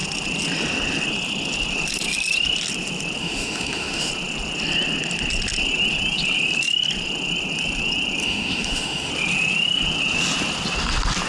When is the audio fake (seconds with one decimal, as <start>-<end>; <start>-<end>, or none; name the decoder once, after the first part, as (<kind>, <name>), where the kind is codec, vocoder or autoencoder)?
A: 3.2-4.1 (autoencoder, DAC-VAE); 8.2-9.1